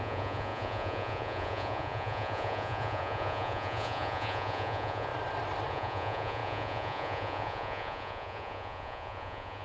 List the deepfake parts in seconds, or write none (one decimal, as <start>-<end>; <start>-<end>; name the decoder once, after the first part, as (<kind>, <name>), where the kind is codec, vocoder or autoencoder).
0.0-5.1 (vocoder, Vocos); 5.7-9.6